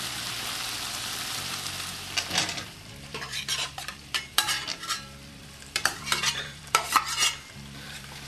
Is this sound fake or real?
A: fake